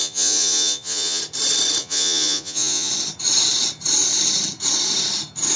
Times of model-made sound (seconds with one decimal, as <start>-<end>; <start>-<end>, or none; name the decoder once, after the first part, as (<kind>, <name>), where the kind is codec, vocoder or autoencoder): 0.0-1.2 (vocoder, Vocos); 1.8-2.9